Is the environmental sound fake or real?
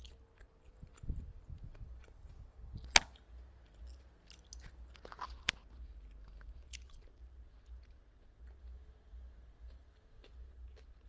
real